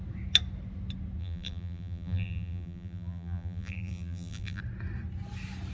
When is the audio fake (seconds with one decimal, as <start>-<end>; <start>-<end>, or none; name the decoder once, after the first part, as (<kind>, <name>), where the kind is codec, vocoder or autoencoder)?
1.2-4.6 (vocoder, BigVGAN v2)